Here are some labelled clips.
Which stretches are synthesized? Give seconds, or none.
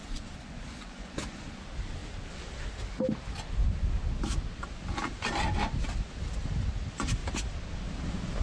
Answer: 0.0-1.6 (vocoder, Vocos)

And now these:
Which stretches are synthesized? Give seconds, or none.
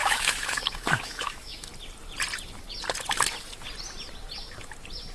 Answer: 0.0-1.7 (autoencoder, DAC-VAE)